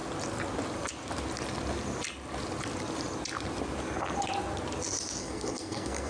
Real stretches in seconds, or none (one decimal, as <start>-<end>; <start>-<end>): 0.0-5.2

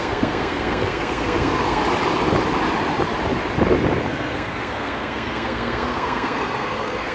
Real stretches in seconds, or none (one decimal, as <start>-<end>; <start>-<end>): 1.8-4.1

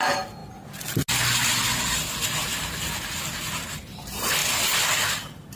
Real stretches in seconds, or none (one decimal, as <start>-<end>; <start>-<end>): 0.0-5.6

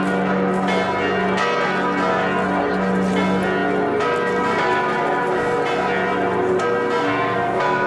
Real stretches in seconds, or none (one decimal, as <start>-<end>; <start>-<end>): 0.0-7.0

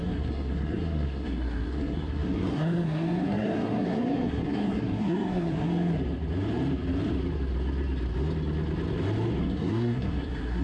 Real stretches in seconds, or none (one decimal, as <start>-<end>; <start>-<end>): 5.7-9.4